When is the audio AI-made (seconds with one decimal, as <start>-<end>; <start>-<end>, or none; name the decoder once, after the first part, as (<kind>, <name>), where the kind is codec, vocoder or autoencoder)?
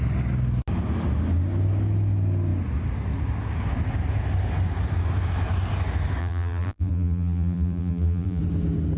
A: 6.2-8.4 (vocoder, BigVGAN v2)